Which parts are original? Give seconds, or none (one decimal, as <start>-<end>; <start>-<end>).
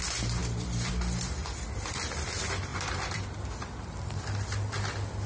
0.0-0.4; 0.9-1.4; 1.9-2.7; 4.2-5.3